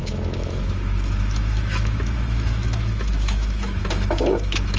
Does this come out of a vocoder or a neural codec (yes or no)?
yes